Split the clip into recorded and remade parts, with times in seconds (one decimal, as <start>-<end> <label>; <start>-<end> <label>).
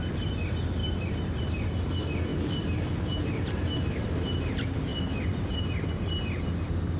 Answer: 0.0-0.8 recorded; 0.8-1.4 remade; 1.4-2.3 recorded; 2.3-4.5 remade; 4.5-7.0 recorded